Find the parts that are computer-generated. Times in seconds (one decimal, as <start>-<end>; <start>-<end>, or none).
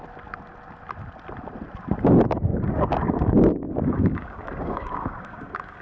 2.5-5.8